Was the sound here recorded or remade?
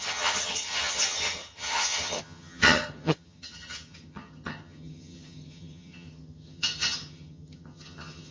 remade